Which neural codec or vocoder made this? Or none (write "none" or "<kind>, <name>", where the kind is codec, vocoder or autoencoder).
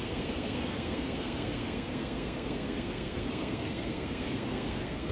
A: codec, SNAC